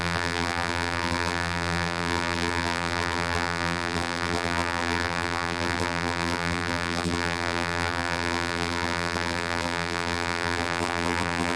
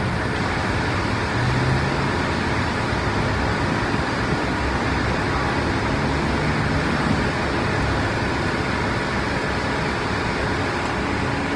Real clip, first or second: second